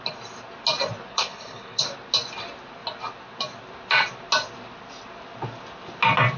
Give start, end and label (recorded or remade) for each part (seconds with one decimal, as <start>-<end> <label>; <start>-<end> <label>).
0.0-1.1 recorded; 1.1-1.8 remade; 1.8-6.4 recorded